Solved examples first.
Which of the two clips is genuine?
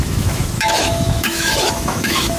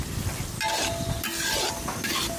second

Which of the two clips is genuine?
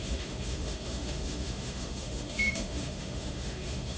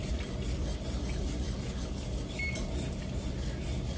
second